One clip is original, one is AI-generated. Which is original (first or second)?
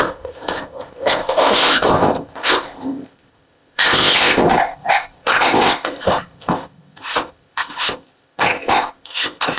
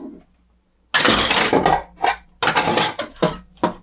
second